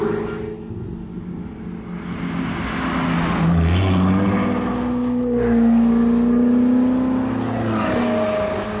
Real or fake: real